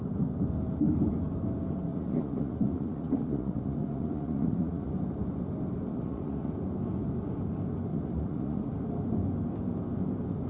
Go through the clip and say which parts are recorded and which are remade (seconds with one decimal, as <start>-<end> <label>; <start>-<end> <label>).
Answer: 0.0-1.9 recorded; 1.9-4.9 remade; 4.9-5.9 recorded; 5.9-6.5 remade; 6.5-7.9 recorded; 7.9-8.6 remade; 8.6-10.5 recorded